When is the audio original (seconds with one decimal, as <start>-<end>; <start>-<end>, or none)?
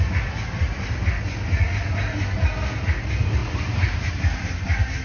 0.0-5.0